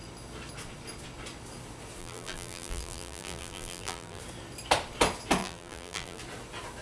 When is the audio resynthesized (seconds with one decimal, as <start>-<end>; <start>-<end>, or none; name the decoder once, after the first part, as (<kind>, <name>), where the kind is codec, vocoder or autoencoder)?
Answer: 2.0-4.2 (vocoder, BigVGAN v2); 5.4-6.2